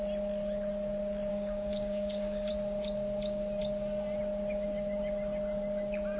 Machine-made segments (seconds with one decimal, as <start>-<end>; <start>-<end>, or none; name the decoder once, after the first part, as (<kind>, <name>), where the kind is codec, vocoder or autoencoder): 1.3-2.5 (codec, DAC)